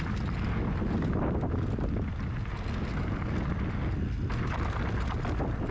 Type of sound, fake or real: real